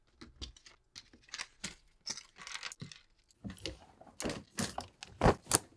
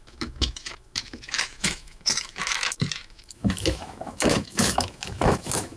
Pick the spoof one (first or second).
second